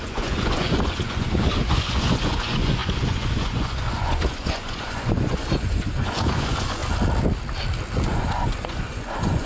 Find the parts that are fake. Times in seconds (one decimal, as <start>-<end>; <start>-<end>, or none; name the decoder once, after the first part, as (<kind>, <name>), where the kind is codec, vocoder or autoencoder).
0.0-6.8 (vocoder, Vocos); 8.1-9.5